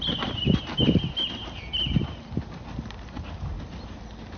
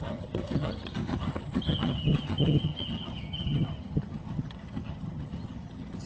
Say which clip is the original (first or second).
first